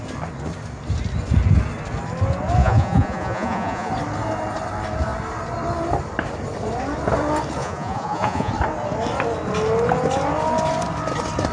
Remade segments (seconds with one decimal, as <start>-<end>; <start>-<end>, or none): 2.6-3.9; 7.6-8.5